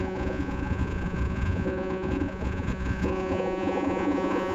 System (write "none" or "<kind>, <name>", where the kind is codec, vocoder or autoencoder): vocoder, Vocos